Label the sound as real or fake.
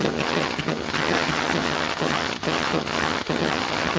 fake